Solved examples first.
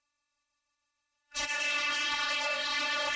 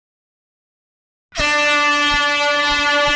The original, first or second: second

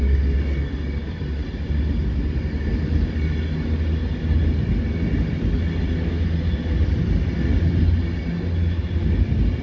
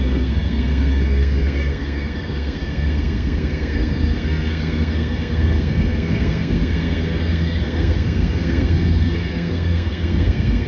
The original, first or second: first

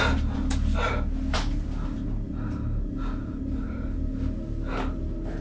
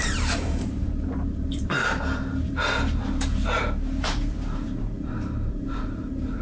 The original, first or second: first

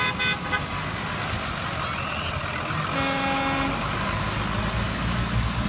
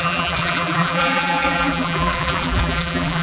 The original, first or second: first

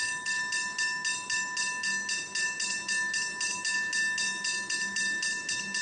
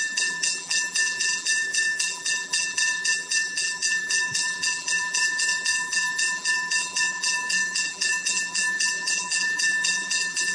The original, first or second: first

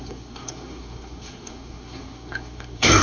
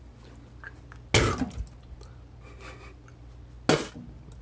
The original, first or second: second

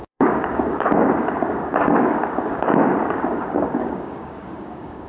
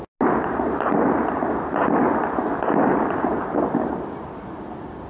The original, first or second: second